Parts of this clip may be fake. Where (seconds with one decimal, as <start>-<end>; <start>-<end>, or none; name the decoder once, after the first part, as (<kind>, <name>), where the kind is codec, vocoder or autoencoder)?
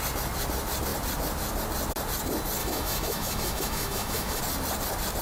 2.6-4.4 (autoencoder, DAC-VAE)